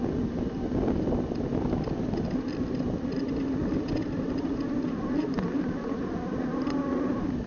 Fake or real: real